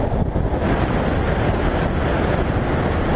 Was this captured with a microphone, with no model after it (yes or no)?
yes